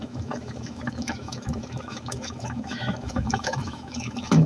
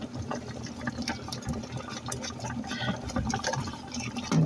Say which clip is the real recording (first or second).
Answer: second